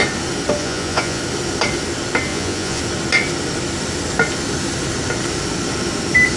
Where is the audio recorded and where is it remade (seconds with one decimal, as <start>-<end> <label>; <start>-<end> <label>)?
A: 0.0-0.6 recorded; 0.6-1.2 remade; 1.2-2.3 recorded; 2.3-2.8 remade; 2.8-6.4 recorded